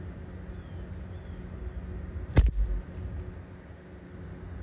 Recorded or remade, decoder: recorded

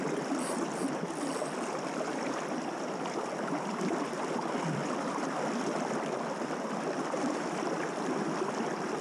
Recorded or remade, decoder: remade, vocoder, BigVGAN v2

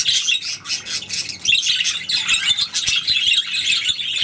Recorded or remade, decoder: recorded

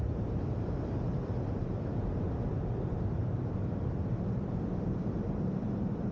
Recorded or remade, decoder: remade, vocoder, BigVGAN v2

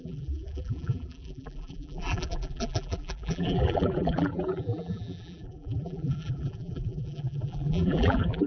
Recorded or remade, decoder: remade, vocoder, BigVGAN v2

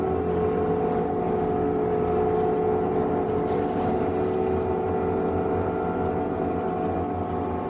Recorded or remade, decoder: recorded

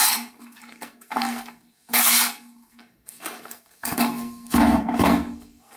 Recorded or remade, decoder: remade, codec, SNAC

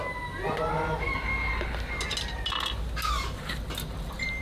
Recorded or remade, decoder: recorded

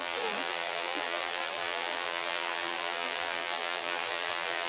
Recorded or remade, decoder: remade, vocoder, BigVGAN v2